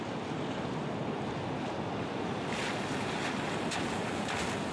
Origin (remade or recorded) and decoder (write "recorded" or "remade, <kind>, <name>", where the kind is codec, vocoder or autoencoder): recorded